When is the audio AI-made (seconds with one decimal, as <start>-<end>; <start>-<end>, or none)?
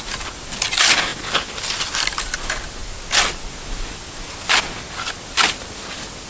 none